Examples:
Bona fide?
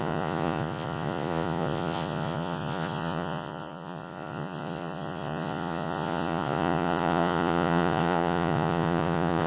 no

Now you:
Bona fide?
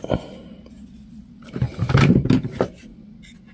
yes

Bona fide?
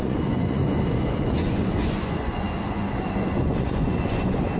no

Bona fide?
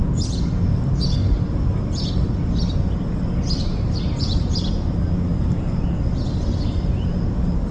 yes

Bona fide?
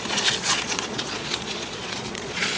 no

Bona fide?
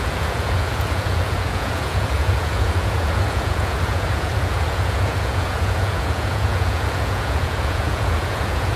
no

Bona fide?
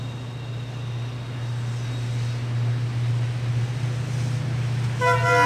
yes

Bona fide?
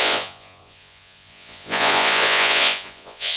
no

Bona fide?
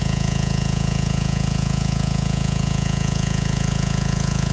no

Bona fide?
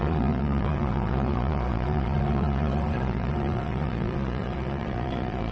no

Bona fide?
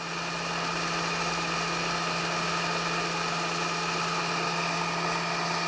yes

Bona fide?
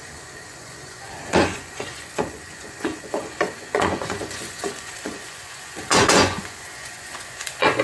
no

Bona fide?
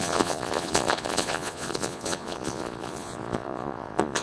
no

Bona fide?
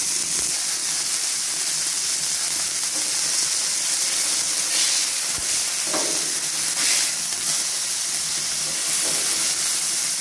yes